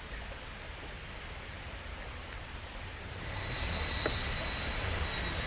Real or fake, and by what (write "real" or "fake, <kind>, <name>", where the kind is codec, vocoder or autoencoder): real